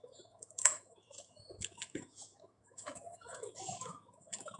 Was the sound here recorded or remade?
remade